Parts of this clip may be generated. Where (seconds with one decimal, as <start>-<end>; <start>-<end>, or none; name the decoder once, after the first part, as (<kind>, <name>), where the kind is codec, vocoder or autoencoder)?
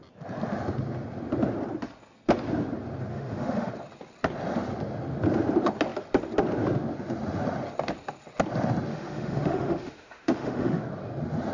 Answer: 3.1-3.7 (autoencoder, DAC-VAE); 8.9-10.8